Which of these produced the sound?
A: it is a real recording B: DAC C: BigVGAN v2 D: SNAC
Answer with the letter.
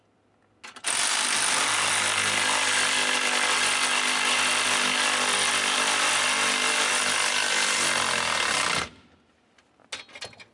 A